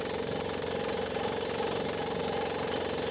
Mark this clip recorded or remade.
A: recorded